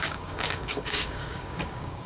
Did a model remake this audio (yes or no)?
yes